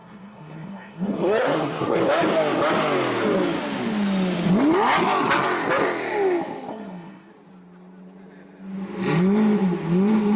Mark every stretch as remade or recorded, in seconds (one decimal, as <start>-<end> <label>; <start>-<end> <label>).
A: 0.0-2.0 remade; 2.0-6.7 recorded; 6.7-7.3 remade; 7.3-10.4 recorded